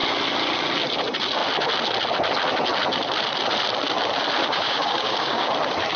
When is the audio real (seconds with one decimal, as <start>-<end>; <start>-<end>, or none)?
0.0-4.4; 5.5-6.0